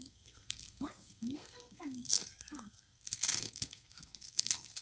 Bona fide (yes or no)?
no